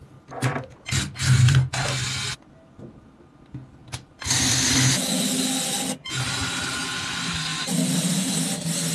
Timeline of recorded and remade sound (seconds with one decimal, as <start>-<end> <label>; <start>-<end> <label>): 0.0-7.5 recorded; 7.5-8.3 remade; 8.3-8.9 recorded